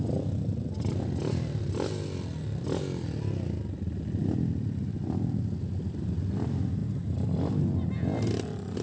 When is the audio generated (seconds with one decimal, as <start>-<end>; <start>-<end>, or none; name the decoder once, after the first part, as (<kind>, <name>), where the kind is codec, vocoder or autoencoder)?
none